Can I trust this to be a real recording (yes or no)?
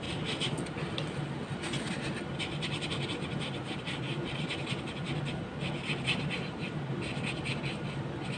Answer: yes